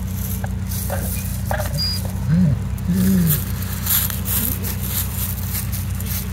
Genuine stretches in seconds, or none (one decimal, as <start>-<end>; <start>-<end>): 0.0-6.3